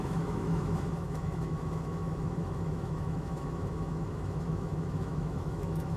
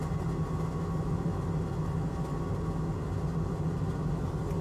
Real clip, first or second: second